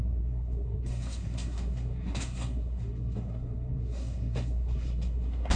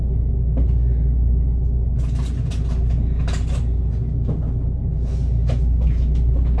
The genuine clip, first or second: second